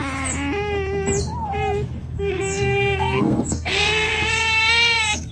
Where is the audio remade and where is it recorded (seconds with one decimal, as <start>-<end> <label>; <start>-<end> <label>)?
0.0-2.0 recorded; 2.0-5.3 remade

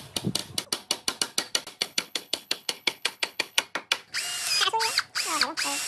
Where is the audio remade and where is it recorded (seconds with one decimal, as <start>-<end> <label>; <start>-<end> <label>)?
0.0-1.8 recorded; 1.8-3.6 remade; 3.6-5.9 recorded

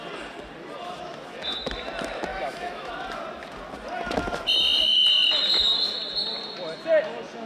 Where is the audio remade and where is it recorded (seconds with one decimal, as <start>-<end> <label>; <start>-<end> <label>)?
0.0-2.3 recorded; 2.3-2.9 remade; 2.9-7.5 recorded

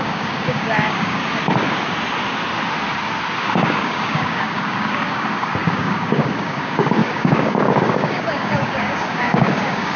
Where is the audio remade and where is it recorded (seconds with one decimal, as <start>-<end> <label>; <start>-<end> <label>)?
0.0-1.2 remade; 1.2-3.4 recorded; 3.4-10.0 remade

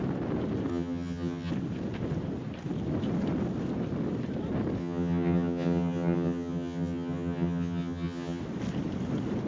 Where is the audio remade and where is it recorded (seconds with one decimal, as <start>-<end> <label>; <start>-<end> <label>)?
0.0-0.7 recorded; 0.7-1.5 remade; 1.5-4.8 recorded; 4.8-8.4 remade; 8.4-9.5 recorded

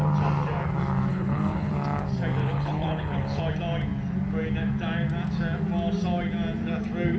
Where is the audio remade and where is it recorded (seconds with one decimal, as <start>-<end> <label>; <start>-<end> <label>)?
0.0-1.1 recorded; 1.1-1.7 remade; 1.7-2.4 recorded; 2.4-3.4 remade; 3.4-7.2 recorded

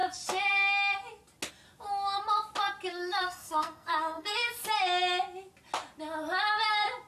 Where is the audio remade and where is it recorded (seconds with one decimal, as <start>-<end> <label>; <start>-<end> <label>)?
0.0-2.9 recorded; 2.9-4.5 remade; 4.5-7.1 recorded